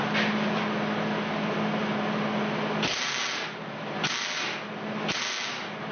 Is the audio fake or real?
real